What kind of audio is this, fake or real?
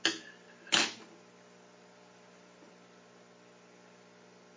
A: real